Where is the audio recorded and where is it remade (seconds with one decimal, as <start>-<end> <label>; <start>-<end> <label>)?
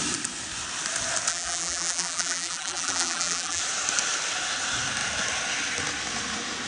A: 0.0-1.3 recorded; 1.3-3.6 remade; 3.6-6.7 recorded